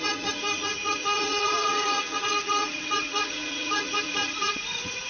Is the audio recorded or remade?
remade